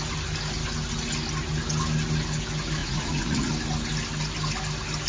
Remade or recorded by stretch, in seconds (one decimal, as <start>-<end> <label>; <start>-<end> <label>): 0.0-2.8 recorded; 2.8-3.5 remade; 3.5-5.1 recorded